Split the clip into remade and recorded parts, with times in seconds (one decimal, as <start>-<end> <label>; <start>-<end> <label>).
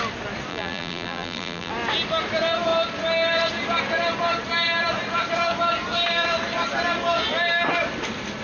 0.0-0.5 recorded; 0.5-1.7 remade; 1.7-8.4 recorded